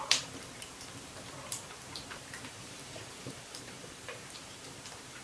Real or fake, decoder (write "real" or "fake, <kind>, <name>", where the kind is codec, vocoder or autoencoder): fake, vocoder, BigVGAN v2